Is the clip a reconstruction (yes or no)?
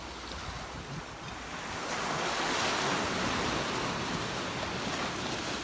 no